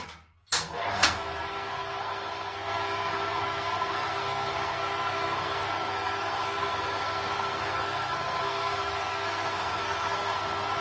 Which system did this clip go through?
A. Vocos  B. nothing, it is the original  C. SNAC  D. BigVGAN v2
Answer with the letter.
C